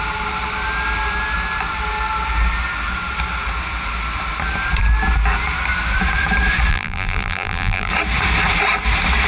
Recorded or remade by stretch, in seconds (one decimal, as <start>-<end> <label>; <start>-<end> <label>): 0.0-6.7 recorded; 6.7-7.9 remade; 7.9-9.3 recorded